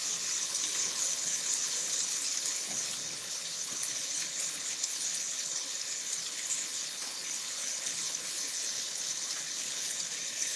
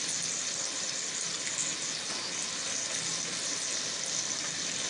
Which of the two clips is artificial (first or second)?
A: first